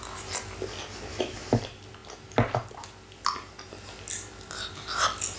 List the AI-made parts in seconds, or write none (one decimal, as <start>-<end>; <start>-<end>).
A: 1.1-1.6